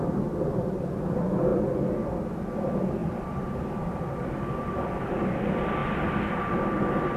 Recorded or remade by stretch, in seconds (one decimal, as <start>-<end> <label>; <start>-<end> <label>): 0.0-7.2 recorded